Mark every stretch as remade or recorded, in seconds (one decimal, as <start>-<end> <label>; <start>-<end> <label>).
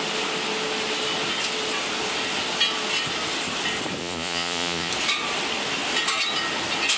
0.0-4.0 recorded; 4.0-4.9 remade; 4.9-7.0 recorded